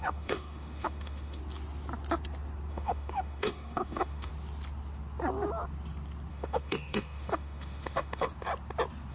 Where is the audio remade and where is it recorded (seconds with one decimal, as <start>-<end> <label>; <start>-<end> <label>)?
0.0-1.4 remade; 1.4-2.7 recorded; 2.7-4.3 remade; 4.3-6.3 recorded; 6.3-8.3 remade; 8.3-9.1 recorded